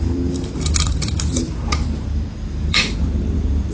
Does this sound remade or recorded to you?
remade